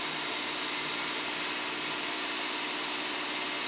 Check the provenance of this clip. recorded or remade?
recorded